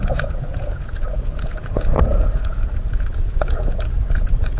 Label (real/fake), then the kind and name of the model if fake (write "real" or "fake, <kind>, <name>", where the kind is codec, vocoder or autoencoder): fake, vocoder, Vocos